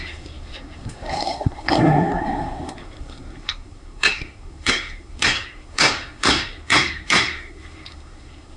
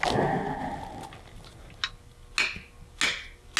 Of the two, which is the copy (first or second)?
first